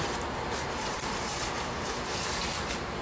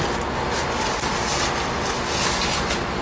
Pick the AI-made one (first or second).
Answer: first